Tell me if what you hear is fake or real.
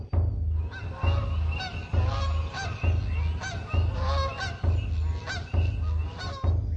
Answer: real